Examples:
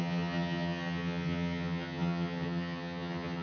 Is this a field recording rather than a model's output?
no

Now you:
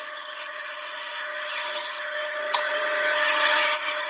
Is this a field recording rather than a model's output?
no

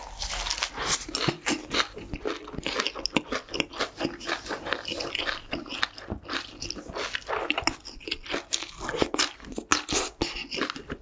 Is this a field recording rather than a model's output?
yes